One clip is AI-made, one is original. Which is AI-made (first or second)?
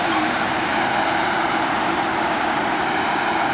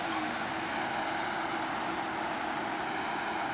first